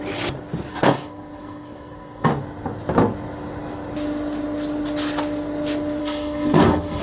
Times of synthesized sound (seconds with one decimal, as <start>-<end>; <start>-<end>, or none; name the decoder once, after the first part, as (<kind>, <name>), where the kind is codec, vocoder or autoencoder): 0.7-2.3 (codec, SNAC); 6.0-7.0